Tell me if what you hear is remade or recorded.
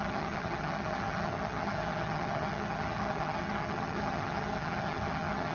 remade